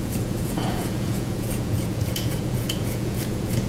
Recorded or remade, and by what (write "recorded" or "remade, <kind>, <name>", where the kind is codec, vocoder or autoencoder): remade, vocoder, Vocos